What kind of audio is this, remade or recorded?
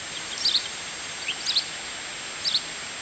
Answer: recorded